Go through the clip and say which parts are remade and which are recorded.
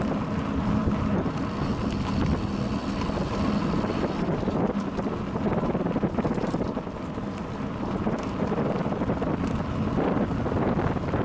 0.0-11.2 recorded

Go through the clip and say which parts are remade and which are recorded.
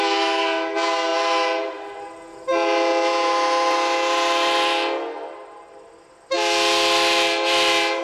0.0-8.0 recorded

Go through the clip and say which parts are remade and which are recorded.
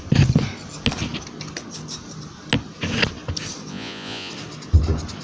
0.0-3.7 recorded; 3.7-4.3 remade; 4.3-5.2 recorded